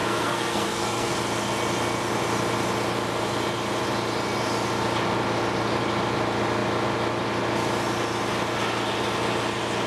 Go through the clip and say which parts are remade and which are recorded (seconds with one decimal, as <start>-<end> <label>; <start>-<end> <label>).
0.0-1.1 remade; 1.1-9.9 recorded